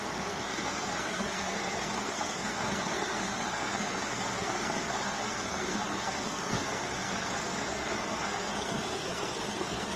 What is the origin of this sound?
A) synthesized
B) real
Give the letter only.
A